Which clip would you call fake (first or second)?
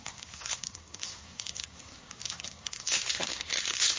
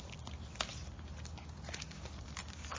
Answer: first